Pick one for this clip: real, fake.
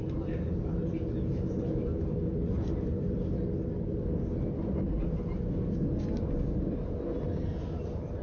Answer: real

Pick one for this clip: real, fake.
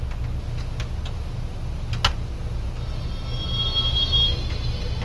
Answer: real